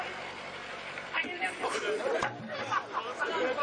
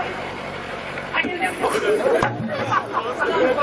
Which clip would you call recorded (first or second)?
first